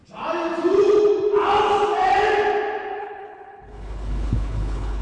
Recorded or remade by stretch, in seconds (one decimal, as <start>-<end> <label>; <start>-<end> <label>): 0.0-3.0 recorded; 3.0-5.0 remade